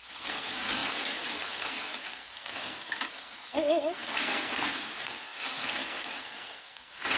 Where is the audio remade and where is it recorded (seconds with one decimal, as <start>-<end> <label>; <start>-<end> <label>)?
0.0-7.2 remade

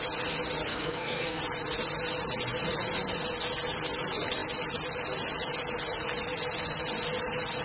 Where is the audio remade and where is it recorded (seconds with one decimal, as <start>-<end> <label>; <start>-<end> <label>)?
0.0-0.7 recorded; 0.7-1.4 remade; 1.4-7.6 recorded

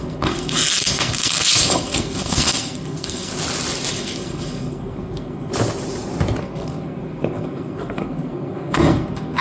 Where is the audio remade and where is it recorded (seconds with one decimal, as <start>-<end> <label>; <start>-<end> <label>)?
0.0-3.3 remade; 3.3-3.9 recorded; 3.9-5.5 remade; 5.5-6.4 recorded; 6.4-9.4 remade